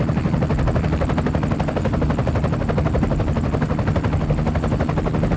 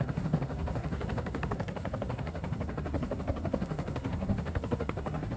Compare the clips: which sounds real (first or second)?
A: first